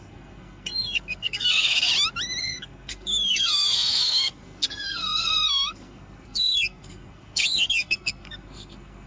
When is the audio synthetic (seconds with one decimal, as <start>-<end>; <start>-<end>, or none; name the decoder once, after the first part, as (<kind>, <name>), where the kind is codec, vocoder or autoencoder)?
0.0-1.9 (codec, SNAC); 2.4-9.1